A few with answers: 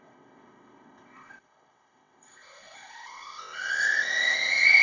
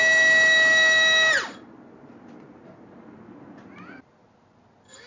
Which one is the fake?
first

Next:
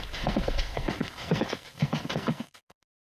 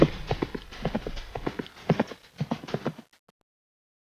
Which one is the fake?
first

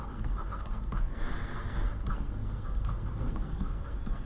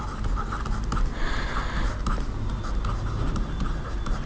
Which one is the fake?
first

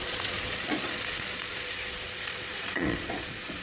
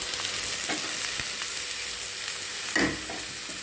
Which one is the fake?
first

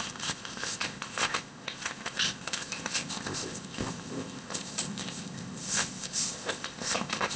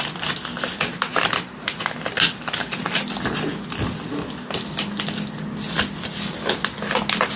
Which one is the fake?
first